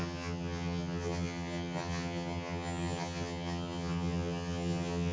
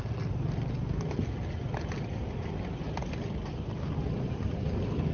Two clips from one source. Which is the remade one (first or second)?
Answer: first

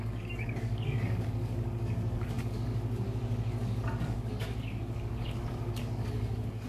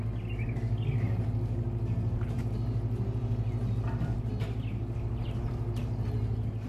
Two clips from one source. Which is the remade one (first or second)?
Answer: first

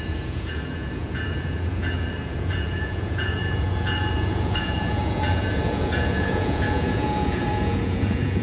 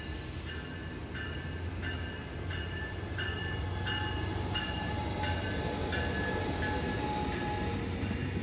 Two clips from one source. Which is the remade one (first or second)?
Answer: first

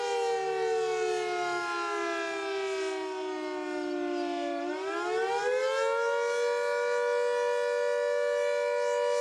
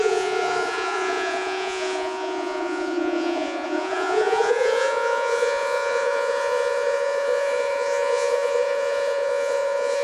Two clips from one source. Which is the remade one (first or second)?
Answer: second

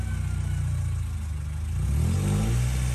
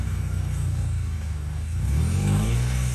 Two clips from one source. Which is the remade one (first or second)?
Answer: second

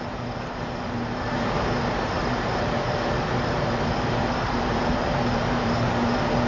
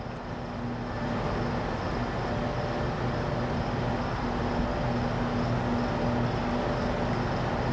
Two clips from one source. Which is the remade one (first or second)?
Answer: first